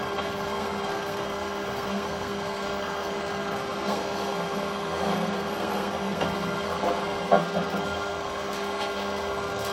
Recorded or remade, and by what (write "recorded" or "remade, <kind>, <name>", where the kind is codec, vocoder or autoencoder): remade, codec, SNAC